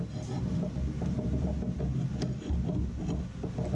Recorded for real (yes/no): yes